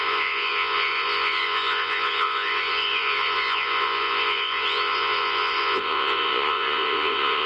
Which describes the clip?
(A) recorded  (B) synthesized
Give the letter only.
B